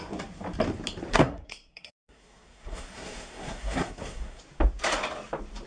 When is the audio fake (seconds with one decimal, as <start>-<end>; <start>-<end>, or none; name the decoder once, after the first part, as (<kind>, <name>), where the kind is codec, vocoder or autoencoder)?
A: 1.1-4.4 (codec, SNAC)